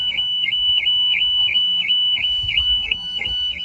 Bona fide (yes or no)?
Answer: no